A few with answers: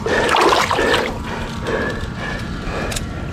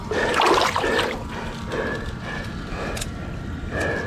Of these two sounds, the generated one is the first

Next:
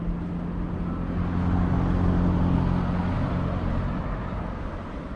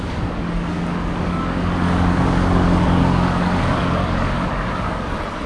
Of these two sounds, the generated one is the second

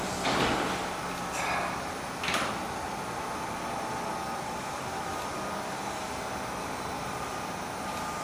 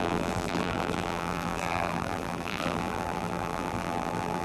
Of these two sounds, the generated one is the second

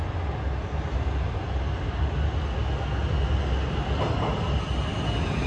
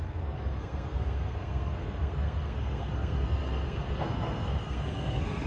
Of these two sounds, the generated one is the second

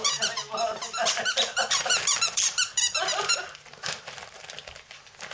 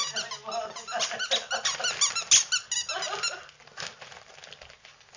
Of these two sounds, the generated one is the first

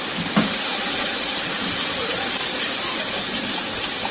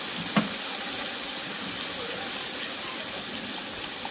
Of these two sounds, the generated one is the first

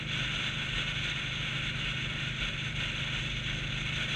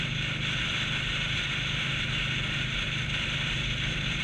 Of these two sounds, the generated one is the second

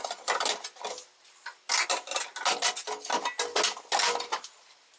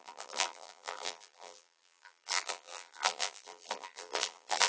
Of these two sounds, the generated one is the second